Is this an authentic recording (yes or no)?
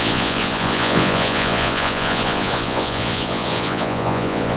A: no